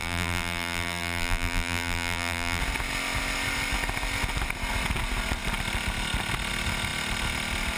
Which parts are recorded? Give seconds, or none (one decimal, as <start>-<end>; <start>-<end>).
2.6-7.8

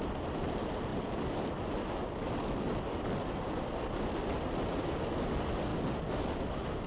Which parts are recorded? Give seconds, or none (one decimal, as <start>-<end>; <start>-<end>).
0.0-6.9